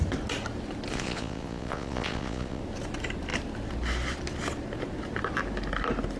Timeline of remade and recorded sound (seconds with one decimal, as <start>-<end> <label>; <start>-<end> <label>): 0.0-0.9 recorded; 0.9-2.6 remade; 2.6-6.2 recorded